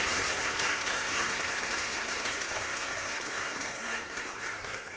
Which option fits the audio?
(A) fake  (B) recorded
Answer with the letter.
A